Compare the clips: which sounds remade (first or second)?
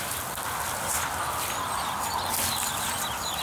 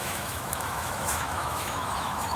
second